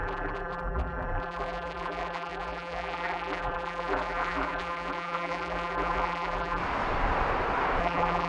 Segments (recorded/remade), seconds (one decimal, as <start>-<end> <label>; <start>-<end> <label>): 0.0-6.6 remade; 6.6-7.8 recorded; 7.8-8.3 remade